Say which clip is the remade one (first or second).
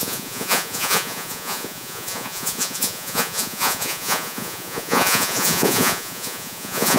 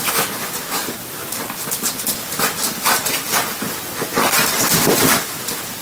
first